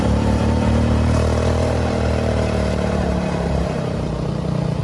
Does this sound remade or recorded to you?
remade